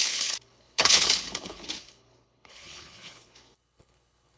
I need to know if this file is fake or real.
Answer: fake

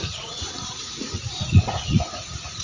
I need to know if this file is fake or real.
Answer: fake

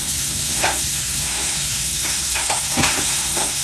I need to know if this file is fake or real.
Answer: fake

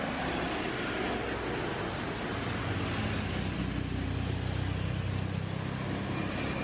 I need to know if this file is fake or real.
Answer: real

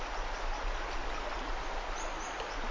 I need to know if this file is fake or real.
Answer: real